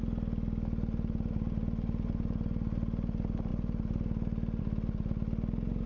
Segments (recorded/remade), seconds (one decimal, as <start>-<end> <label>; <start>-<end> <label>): 0.0-5.9 recorded